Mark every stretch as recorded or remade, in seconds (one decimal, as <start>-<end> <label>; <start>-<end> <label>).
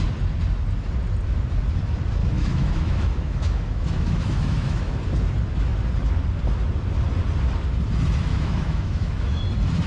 0.0-2.2 recorded; 2.2-4.9 remade; 4.9-8.3 recorded; 8.3-9.4 remade; 9.4-9.9 recorded